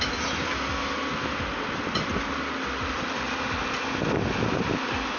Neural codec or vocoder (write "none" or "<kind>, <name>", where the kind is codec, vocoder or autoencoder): none